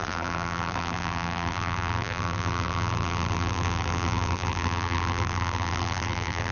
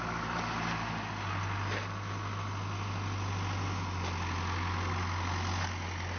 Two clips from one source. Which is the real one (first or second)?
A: second